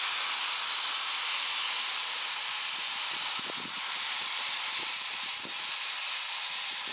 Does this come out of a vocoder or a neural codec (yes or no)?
no